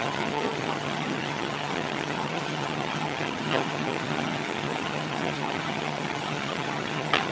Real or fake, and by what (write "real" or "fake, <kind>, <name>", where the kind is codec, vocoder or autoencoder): fake, vocoder, HiFi-GAN